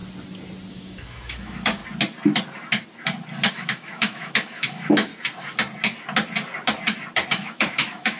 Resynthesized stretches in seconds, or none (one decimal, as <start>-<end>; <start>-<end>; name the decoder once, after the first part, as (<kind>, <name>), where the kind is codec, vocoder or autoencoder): 0.7-1.8 (autoencoder, DAC-VAE); 3.5-5.1; 7.3-8.2